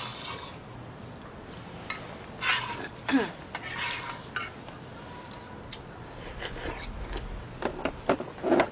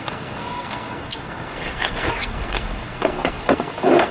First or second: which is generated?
second